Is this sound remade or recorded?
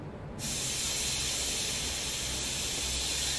recorded